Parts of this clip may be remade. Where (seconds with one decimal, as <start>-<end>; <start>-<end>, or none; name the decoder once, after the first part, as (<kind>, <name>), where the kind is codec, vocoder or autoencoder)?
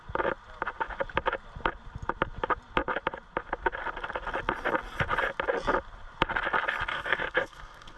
6.9-8.0 (codec, SNAC)